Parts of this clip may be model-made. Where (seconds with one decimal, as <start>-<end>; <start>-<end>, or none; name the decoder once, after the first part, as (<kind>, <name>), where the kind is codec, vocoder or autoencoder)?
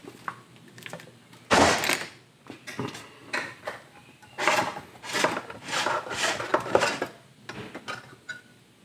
3.2-4.2 (vocoder, BigVGAN v2)